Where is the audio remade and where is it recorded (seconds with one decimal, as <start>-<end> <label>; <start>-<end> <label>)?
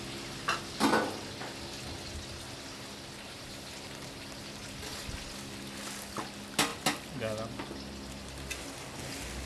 0.0-9.5 recorded